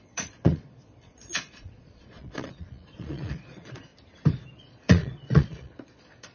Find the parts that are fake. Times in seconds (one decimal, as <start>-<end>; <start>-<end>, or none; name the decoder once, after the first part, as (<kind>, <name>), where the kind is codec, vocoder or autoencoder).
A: 0.0-3.9 (vocoder, Vocos); 4.6-6.3